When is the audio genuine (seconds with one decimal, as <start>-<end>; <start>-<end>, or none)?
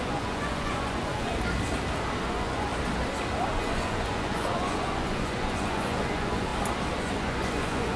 1.3-2.2; 2.7-3.5; 6.5-7.0